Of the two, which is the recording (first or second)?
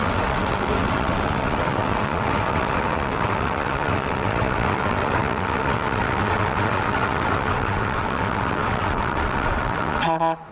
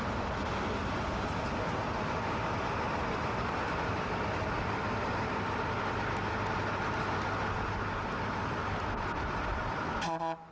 second